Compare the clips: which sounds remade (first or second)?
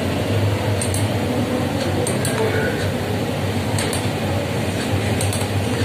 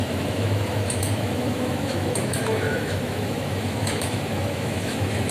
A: second